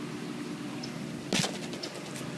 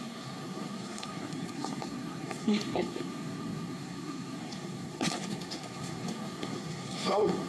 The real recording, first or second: first